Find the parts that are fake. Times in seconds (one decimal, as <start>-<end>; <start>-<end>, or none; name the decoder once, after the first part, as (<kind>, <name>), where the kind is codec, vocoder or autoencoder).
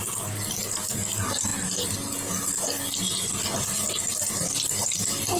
none